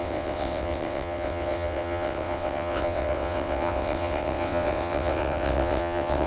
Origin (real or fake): fake